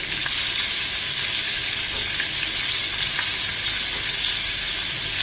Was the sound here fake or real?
real